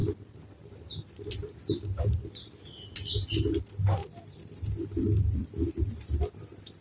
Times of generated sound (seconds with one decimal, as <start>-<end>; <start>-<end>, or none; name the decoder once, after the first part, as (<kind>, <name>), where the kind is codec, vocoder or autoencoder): none